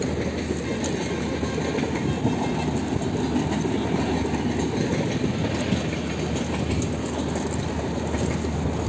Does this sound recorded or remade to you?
recorded